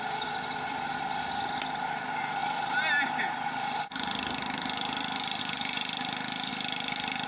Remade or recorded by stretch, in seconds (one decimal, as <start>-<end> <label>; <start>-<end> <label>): 0.0-2.4 recorded; 2.4-5.4 remade; 5.4-6.5 recorded; 6.5-7.3 remade